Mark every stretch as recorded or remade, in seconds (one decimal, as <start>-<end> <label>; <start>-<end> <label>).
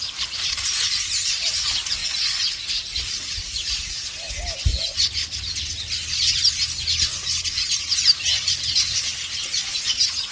0.0-2.0 remade; 2.0-3.4 recorded; 3.4-4.7 remade; 4.7-7.8 recorded; 7.8-10.3 remade